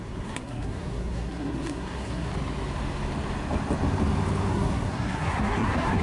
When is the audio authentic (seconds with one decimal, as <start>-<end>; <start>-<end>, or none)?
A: 2.3-4.5